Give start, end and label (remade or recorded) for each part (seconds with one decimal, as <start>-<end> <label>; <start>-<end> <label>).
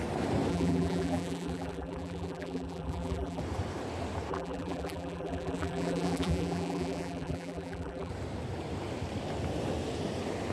0.0-0.5 recorded; 0.5-3.4 remade; 3.4-4.3 recorded; 4.3-8.1 remade; 8.1-10.5 recorded